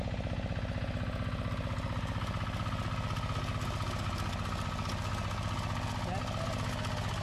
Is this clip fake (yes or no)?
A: no